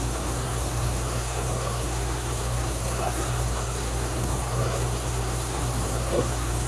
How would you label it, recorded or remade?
remade